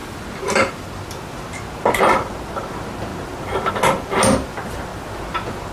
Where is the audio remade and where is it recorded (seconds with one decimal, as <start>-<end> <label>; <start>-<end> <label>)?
0.0-5.7 recorded